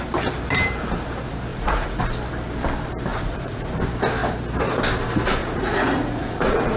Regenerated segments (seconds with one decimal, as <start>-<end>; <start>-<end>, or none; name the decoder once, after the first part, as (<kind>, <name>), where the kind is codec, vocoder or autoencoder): 1.5-2.0 (vocoder, Vocos); 3.1-3.7; 5.4-6.8